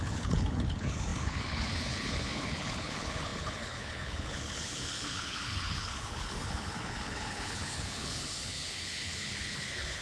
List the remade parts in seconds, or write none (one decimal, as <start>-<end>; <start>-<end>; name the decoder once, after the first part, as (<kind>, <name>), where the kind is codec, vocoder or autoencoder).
0.0-10.0 (codec, HILCodec)